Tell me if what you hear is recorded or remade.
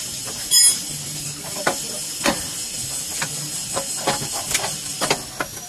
recorded